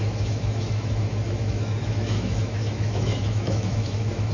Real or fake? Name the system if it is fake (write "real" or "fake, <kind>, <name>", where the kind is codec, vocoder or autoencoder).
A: fake, autoencoder, DAC-VAE